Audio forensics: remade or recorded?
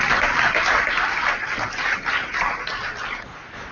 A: recorded